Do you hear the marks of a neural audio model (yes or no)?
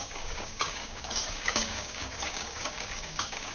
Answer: yes